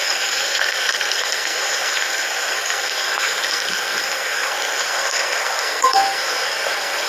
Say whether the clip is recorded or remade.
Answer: remade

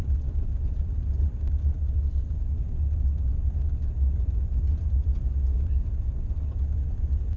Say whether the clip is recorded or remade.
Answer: recorded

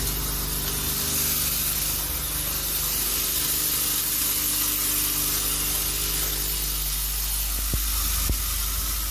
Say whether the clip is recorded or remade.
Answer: recorded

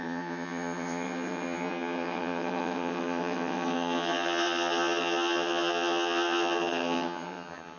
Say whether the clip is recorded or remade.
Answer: remade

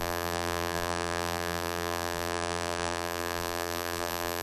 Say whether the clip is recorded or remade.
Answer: remade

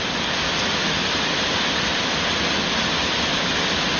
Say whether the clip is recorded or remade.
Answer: recorded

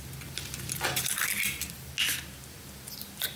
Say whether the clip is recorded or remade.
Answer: recorded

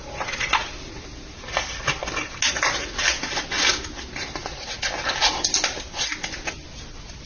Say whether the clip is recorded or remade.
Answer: recorded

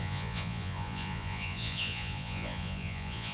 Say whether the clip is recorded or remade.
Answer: remade